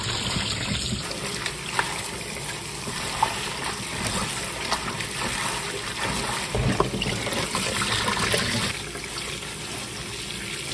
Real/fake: real